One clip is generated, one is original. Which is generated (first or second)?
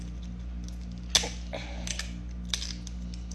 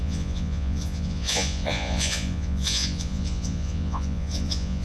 second